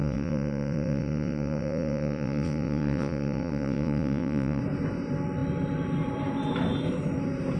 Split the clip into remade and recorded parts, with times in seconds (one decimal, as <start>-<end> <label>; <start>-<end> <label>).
0.0-4.6 remade; 4.6-7.6 recorded

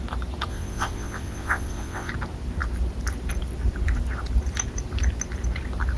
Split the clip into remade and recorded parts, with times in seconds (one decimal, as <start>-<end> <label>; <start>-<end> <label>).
0.0-0.5 recorded; 0.5-2.1 remade; 2.1-6.0 recorded

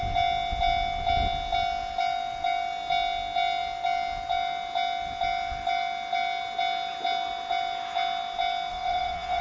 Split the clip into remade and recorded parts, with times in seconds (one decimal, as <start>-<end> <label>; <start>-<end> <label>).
0.0-8.7 recorded; 8.7-9.4 remade

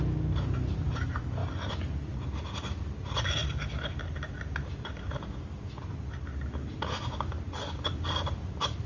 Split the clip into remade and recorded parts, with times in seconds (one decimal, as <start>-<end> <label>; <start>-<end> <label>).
0.0-8.9 recorded

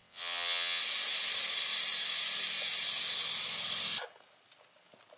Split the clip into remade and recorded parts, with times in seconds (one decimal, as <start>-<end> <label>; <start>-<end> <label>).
0.0-0.8 remade; 0.8-5.2 recorded

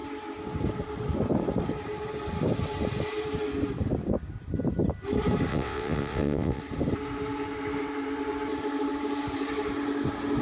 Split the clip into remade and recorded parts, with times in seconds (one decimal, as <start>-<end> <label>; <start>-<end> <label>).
0.0-5.5 recorded; 5.5-6.6 remade; 6.6-10.4 recorded

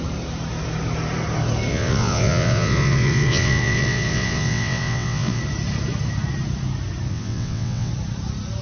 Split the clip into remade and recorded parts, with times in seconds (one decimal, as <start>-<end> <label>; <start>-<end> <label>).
0.0-1.7 recorded; 1.7-5.4 remade; 5.4-7.1 recorded; 7.1-7.9 remade; 7.9-8.6 recorded

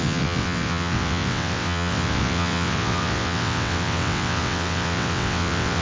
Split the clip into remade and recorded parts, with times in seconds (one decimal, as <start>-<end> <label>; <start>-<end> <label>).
0.0-5.8 remade